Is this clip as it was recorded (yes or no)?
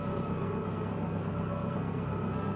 no